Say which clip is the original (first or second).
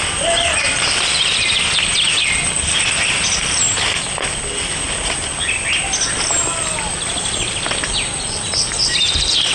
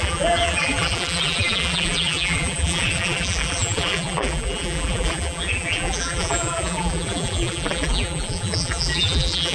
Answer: first